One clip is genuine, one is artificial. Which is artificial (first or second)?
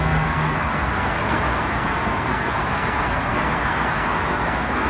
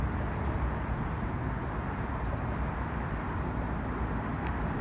first